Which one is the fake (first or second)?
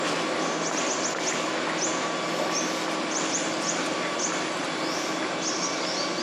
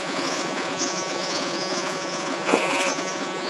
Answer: second